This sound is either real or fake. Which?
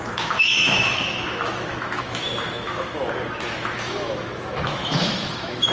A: fake